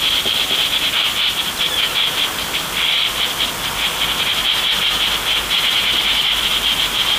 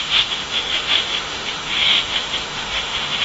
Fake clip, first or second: second